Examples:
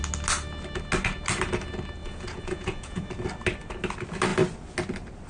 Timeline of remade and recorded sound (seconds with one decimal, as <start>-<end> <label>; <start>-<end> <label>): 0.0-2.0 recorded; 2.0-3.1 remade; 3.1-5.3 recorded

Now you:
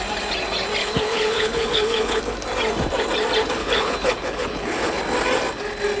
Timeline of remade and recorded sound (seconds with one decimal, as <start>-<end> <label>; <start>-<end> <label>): 0.0-0.8 recorded; 0.8-2.2 remade; 2.2-3.6 recorded; 3.6-5.0 remade; 5.0-6.0 recorded

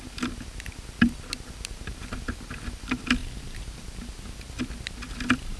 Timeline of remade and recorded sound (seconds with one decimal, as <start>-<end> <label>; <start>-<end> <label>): 0.0-5.6 recorded